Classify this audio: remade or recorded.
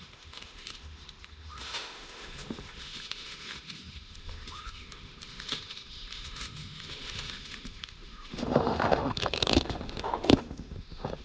remade